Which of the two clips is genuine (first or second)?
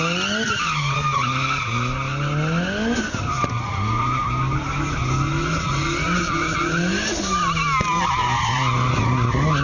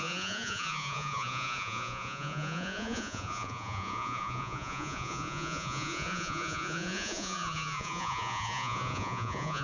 first